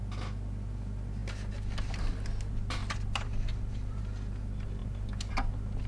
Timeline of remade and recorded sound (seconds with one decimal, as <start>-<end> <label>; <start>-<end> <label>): 0.0-2.8 recorded; 2.8-4.0 remade; 4.0-5.9 recorded

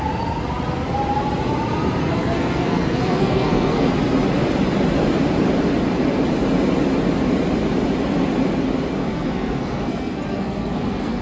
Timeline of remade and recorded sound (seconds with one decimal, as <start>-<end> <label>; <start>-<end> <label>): 0.0-2.0 recorded; 2.0-3.9 remade; 3.9-9.0 recorded; 9.0-11.2 remade